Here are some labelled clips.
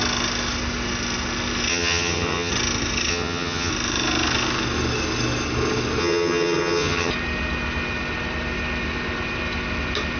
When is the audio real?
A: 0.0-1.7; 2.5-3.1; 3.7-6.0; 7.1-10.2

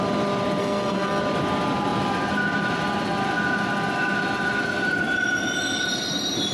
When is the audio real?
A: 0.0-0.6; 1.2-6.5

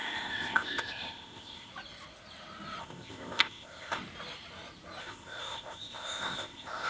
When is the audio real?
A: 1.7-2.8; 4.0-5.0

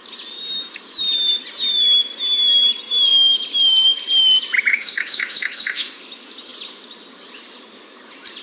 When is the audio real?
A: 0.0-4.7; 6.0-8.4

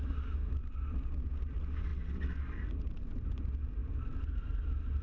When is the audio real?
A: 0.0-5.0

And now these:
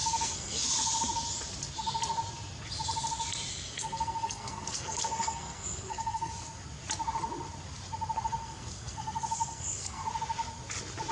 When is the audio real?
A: 0.7-3.5; 6.3-8.4; 10.0-11.1

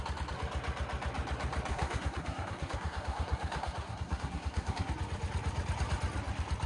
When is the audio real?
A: 0.0-1.7; 4.9-6.7

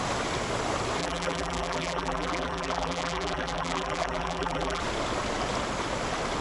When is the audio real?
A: 0.0-1.0; 4.8-6.4